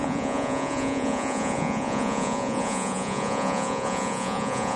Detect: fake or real fake